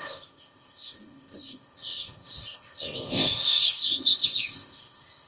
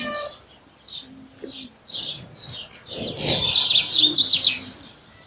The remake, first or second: first